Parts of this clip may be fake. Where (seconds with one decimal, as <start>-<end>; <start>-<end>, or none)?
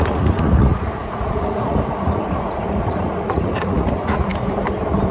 0.0-4.3